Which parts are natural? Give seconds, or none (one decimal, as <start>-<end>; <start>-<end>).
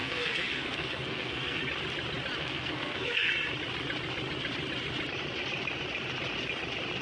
1.6-2.4; 3.3-7.0